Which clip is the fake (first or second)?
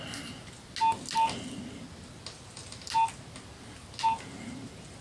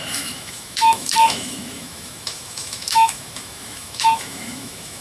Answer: second